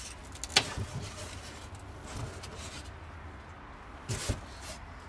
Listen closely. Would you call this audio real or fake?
real